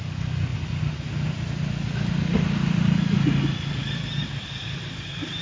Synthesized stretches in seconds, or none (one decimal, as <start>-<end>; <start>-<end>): none